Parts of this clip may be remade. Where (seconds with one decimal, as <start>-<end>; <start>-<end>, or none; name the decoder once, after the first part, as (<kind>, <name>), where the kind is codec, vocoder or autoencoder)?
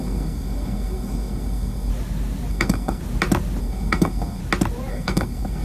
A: 0.0-1.9 (codec, SNAC); 2.5-3.0; 3.6-4.4; 4.9-5.6